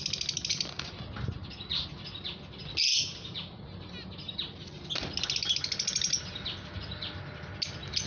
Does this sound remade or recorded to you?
recorded